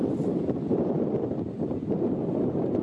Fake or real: real